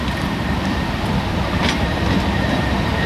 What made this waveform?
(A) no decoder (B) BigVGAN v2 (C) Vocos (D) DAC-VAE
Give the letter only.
A